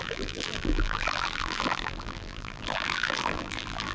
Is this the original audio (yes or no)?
no